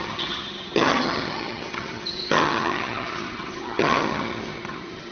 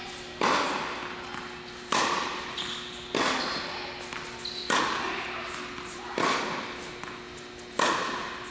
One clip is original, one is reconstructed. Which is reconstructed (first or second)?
first